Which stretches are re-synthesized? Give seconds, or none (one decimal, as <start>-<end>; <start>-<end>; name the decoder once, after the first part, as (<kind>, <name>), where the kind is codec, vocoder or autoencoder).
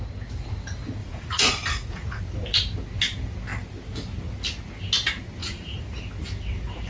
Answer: 1.0-2.2 (vocoder, Vocos); 5.4-6.0